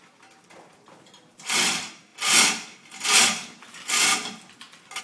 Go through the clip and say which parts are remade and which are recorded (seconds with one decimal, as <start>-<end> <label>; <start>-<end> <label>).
0.0-5.0 recorded